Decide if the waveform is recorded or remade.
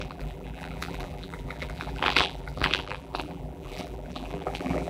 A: remade